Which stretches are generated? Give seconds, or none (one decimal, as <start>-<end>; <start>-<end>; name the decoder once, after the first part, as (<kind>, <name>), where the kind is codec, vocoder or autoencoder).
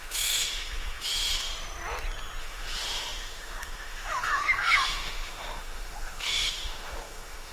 0.0-1.5 (autoencoder, DAC-VAE); 2.4-7.5